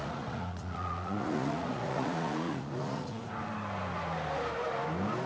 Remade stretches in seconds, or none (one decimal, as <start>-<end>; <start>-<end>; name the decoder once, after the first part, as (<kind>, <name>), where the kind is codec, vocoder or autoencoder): 0.0-3.2 (vocoder, Vocos)